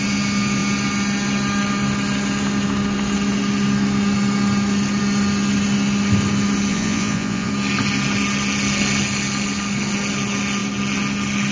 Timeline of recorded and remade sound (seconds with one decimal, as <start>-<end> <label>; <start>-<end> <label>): 0.0-6.7 recorded; 6.7-7.5 remade; 7.5-11.5 recorded